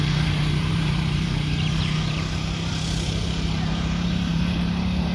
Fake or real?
fake